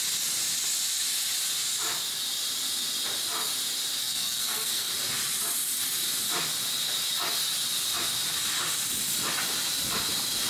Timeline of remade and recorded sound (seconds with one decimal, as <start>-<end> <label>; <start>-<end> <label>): 0.0-4.0 recorded; 4.0-4.9 remade; 4.9-10.5 recorded